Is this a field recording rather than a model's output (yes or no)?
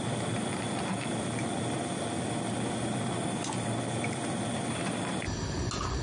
yes